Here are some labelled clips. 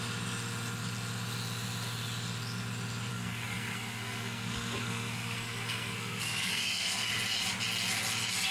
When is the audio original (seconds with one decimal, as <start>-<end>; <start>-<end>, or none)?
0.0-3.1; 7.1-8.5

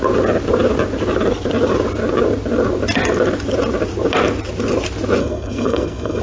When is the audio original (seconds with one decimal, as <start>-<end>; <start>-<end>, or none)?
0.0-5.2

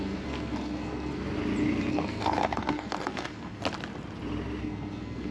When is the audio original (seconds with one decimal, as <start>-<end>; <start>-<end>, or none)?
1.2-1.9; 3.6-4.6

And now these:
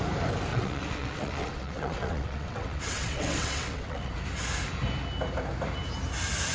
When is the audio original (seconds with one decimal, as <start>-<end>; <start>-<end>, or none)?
0.0-0.5; 4.1-6.5

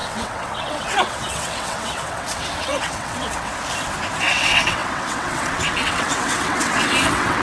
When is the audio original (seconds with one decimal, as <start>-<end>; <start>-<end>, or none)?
3.5-4.2